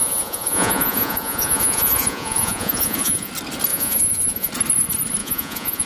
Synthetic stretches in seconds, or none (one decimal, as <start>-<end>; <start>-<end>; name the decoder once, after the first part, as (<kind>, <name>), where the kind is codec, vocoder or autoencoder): 0.0-3.3 (vocoder, Vocos); 3.7-4.5; 5.2-5.9